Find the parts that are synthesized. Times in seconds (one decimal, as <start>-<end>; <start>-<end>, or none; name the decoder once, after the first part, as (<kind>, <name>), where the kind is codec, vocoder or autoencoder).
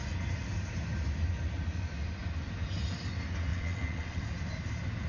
3.5-4.2 (vocoder, WaveNeXt)